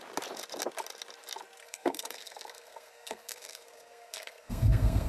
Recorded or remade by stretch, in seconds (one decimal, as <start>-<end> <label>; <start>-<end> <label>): 0.0-1.6 recorded; 1.6-5.1 remade

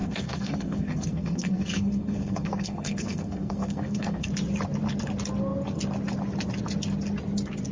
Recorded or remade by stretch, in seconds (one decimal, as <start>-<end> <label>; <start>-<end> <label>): 0.0-4.3 remade; 4.3-7.7 recorded

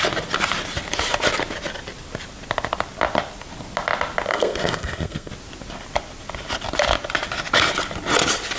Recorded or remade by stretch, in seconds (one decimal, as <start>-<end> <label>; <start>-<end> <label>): 0.0-4.3 recorded; 4.3-5.3 remade; 5.3-8.6 recorded

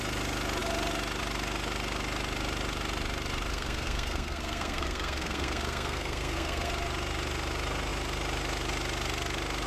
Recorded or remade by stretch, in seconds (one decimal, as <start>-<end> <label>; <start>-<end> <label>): 0.0-3.5 recorded; 3.5-6.7 remade; 6.7-9.7 recorded

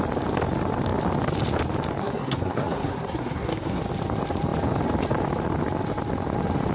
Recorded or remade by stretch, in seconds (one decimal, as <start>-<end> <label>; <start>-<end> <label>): 0.0-2.0 recorded; 2.0-3.8 remade; 3.8-6.7 recorded

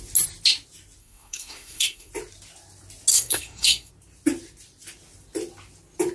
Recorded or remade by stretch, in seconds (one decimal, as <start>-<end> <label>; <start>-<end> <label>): 0.0-1.0 recorded; 1.0-2.1 remade; 2.1-3.1 recorded; 3.1-3.9 remade; 3.9-6.1 recorded

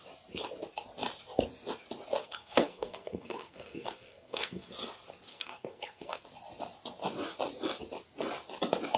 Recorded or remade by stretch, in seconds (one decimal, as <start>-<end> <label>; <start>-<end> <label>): 0.0-2.2 recorded; 2.2-4.7 remade; 4.7-5.3 recorded; 5.3-6.2 remade; 6.2-9.0 recorded